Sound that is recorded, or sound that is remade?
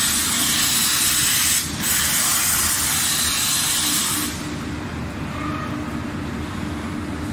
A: recorded